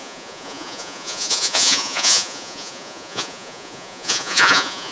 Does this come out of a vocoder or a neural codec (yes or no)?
yes